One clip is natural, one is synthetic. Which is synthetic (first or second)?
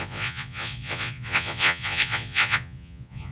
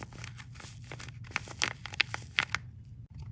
first